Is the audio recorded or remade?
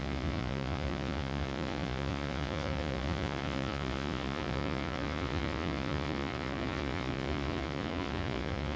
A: remade